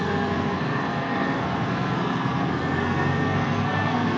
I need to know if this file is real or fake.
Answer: fake